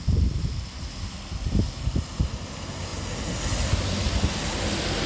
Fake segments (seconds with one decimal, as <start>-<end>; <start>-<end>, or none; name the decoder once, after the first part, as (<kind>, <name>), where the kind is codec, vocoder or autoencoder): none